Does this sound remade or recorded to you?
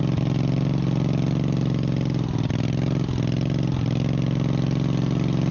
recorded